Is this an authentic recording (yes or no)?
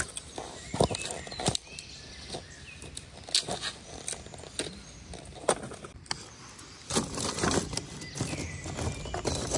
yes